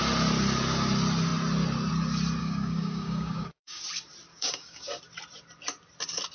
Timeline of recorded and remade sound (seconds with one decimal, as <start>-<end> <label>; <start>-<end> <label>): 0.0-2.4 recorded; 2.4-3.8 remade; 3.8-4.3 recorded; 4.3-5.0 remade; 5.0-6.3 recorded